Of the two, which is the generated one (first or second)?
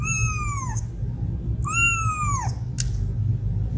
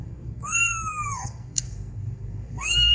second